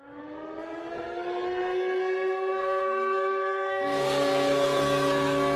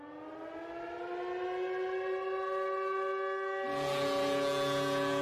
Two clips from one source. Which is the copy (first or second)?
first